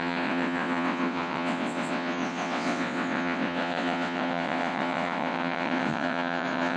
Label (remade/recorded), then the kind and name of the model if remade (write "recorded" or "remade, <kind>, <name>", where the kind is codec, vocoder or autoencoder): remade, vocoder, WaveNeXt